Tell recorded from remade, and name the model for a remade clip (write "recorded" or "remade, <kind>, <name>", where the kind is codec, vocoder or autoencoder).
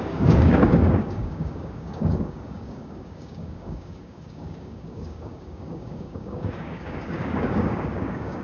remade, codec, DAC